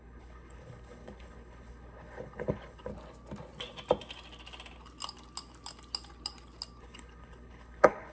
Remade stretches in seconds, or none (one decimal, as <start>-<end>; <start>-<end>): 0.0-2.9; 6.8-8.1